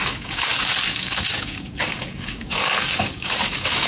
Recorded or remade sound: remade